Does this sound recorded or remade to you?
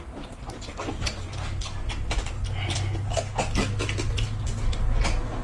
recorded